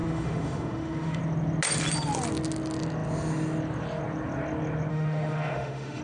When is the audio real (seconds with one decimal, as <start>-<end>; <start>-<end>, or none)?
1.2-4.9